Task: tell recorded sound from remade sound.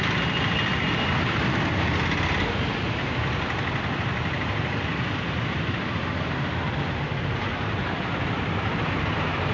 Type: recorded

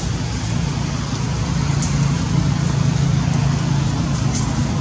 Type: recorded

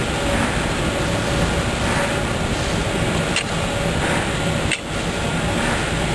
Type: recorded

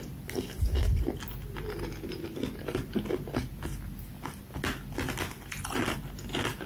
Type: recorded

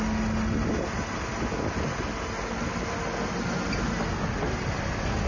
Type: recorded